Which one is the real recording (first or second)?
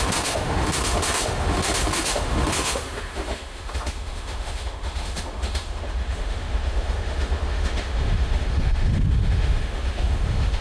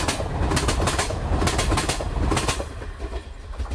second